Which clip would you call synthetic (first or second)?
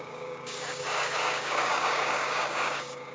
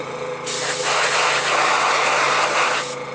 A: first